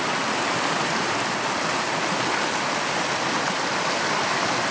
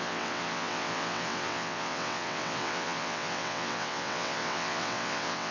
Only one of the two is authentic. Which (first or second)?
first